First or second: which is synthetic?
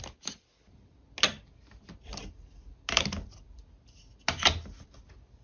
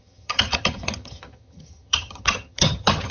second